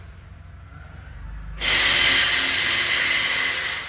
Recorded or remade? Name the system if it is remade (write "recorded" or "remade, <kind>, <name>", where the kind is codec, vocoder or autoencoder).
recorded